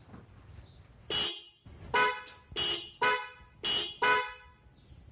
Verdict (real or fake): real